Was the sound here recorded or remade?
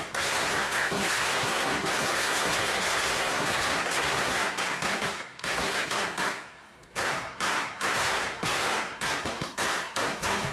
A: remade